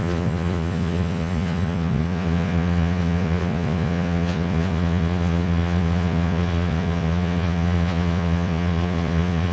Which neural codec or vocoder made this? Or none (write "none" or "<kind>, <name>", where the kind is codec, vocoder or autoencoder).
vocoder, Vocos